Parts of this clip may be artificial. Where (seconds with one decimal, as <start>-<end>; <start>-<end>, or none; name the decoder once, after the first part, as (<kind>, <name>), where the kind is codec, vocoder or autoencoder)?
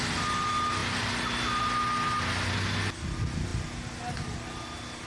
none